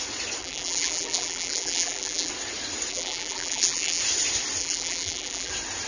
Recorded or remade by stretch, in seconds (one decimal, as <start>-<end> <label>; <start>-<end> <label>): 0.0-0.4 recorded; 0.4-2.3 remade; 2.3-2.9 recorded; 2.9-4.0 remade; 4.0-4.6 recorded; 4.6-5.5 remade; 5.5-5.9 recorded